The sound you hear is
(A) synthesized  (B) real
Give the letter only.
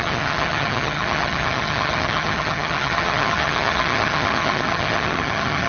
A